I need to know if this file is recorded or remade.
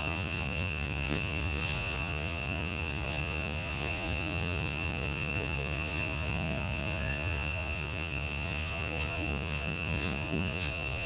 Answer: remade